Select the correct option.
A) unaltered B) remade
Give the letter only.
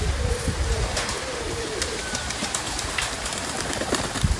B